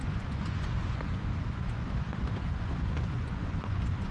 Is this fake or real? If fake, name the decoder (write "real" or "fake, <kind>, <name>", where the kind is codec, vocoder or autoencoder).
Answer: fake, vocoder, Vocos